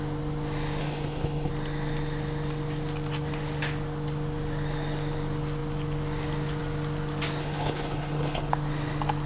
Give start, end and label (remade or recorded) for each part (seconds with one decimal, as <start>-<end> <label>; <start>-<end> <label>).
0.0-0.8 recorded; 0.8-1.5 remade; 1.5-7.4 recorded; 7.4-8.5 remade; 8.5-9.3 recorded